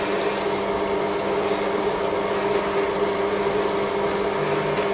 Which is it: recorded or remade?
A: recorded